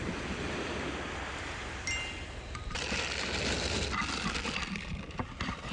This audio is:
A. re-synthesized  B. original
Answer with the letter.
B